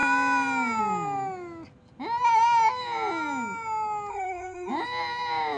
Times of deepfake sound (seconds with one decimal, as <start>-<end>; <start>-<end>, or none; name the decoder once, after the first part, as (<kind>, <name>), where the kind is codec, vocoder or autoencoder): 4.1-4.7 (codec, SNAC)